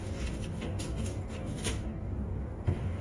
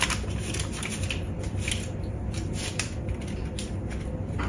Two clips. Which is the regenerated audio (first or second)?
first